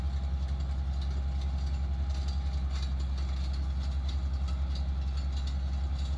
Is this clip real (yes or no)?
yes